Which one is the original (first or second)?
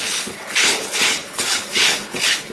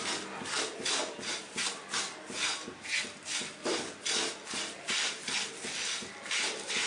second